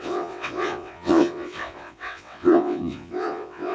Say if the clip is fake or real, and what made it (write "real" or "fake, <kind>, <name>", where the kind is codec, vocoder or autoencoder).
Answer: fake, vocoder, WaveNeXt